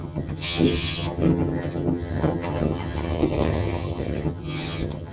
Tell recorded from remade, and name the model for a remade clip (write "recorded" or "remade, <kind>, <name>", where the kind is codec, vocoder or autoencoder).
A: remade, vocoder, HiFi-GAN